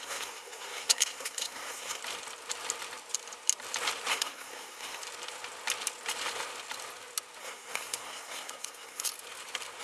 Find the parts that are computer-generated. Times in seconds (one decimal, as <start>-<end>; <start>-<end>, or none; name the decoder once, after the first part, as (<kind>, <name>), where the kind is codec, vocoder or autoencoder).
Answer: 0.0-2.0 (codec, SNAC); 4.1-5.0; 7.4-9.1